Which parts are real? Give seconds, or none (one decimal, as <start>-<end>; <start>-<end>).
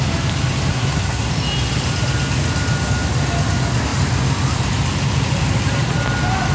0.0-0.7; 1.3-6.5